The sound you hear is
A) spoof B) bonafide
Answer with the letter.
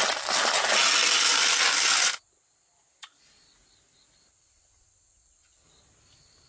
B